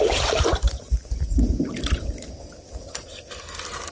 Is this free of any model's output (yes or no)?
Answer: no